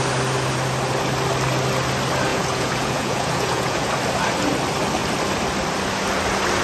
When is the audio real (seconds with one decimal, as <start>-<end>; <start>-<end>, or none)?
0.0-2.3; 3.9-6.6